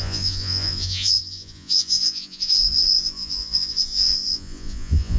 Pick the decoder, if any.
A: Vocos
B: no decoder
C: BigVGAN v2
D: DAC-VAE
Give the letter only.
A